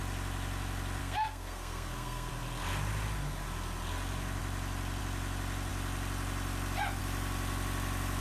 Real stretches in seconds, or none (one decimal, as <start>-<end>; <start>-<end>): 0.0-1.0; 2.3-8.2